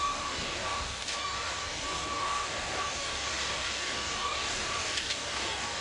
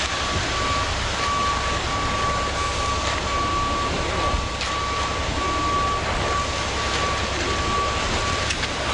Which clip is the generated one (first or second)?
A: first